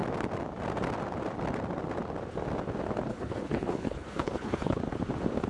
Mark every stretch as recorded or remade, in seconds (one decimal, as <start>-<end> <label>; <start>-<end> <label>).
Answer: 0.0-3.1 recorded; 3.1-4.8 remade; 4.8-5.5 recorded